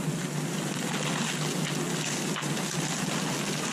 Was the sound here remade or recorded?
recorded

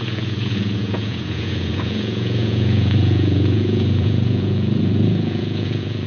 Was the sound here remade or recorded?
remade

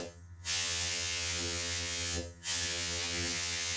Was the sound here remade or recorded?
remade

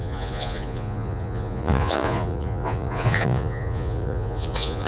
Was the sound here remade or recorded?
remade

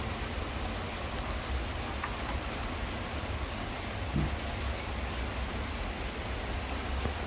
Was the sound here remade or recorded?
recorded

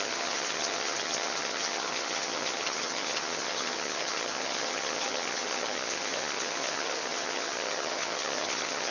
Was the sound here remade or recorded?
remade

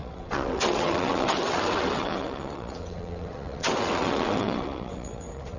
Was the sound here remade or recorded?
remade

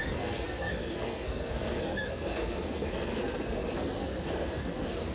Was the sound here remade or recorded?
remade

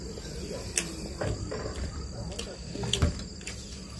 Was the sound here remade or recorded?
recorded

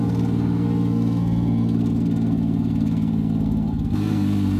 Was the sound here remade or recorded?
remade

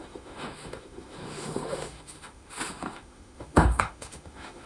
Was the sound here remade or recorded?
remade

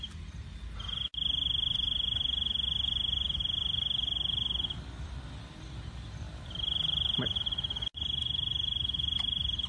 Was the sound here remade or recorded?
recorded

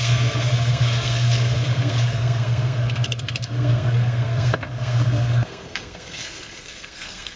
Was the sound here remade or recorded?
remade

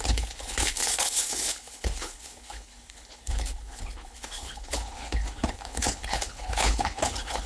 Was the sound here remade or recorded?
remade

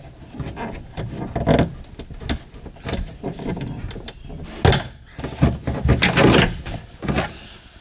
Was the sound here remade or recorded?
recorded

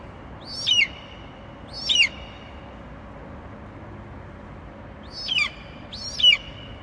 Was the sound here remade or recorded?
recorded